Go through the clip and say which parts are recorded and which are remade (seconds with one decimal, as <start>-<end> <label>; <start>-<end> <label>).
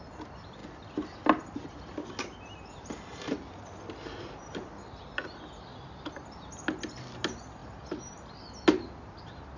0.0-9.6 recorded